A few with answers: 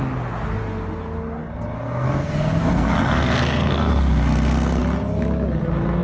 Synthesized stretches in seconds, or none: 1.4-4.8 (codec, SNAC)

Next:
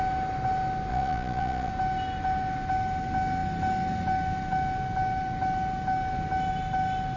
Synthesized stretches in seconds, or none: 0.9-1.7 (vocoder, Vocos)

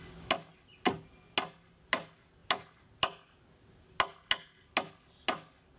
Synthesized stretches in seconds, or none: none

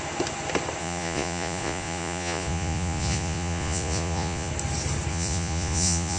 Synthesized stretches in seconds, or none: 0.8-4.5 (vocoder, Vocos); 5.1-6.2